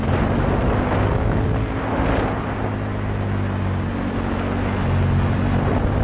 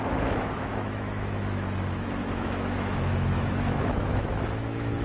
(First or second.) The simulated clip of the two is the second